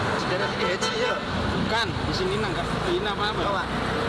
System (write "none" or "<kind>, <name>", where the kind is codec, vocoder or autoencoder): none